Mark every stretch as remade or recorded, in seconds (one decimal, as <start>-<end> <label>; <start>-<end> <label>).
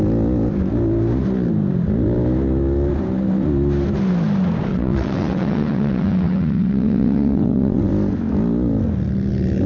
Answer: 0.0-4.7 recorded; 4.7-7.9 remade; 7.9-9.7 recorded